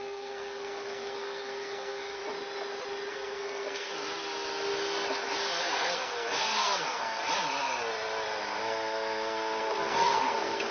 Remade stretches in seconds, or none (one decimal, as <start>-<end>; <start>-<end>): 0.0-2.2; 3.1-3.9; 5.6-7.2; 8.6-10.7